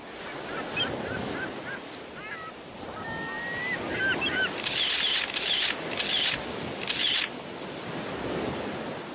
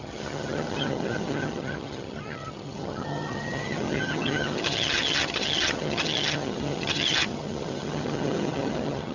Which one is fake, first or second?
second